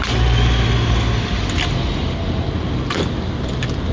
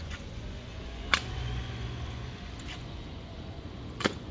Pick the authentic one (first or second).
first